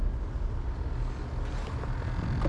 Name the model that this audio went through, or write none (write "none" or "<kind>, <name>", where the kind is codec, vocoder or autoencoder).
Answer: none